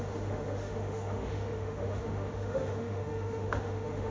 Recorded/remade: remade